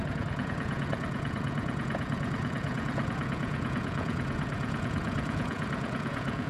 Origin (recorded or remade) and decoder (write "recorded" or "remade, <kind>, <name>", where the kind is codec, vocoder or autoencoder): remade, vocoder, Vocos